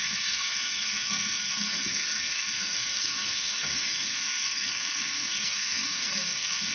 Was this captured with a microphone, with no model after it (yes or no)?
no